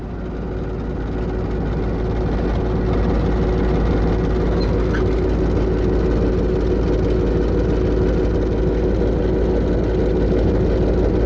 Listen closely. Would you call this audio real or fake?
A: real